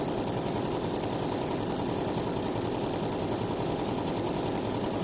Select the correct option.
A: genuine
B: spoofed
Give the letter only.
A